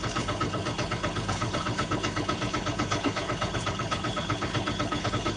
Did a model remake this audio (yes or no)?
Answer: yes